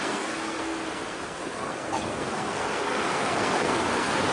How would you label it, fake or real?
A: fake